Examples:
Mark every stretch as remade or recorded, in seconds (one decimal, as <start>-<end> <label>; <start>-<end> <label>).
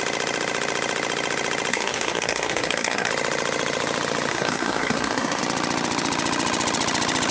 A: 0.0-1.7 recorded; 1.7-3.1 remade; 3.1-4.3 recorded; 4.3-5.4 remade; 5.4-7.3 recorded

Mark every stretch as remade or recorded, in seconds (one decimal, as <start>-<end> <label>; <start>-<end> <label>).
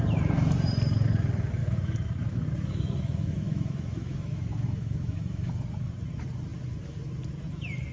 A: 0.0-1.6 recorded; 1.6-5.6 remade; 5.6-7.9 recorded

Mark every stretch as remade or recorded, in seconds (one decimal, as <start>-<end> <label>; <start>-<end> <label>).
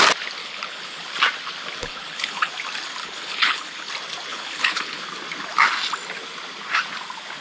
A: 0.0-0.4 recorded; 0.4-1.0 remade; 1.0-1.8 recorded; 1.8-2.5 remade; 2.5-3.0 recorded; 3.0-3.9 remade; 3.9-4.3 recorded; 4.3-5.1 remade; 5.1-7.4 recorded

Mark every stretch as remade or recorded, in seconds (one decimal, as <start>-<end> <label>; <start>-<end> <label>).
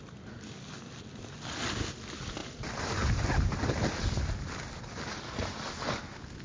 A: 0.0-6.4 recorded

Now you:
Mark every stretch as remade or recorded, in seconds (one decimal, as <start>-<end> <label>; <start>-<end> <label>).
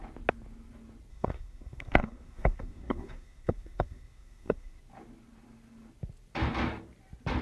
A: 0.0-1.1 recorded; 1.1-4.8 remade; 4.8-7.4 recorded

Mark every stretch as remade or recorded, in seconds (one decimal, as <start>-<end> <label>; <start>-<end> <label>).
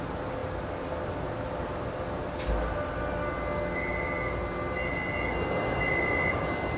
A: 0.0-6.8 recorded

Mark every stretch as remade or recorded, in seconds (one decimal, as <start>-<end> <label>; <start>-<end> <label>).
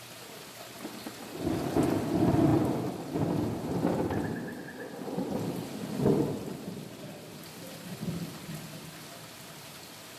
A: 0.0-10.2 recorded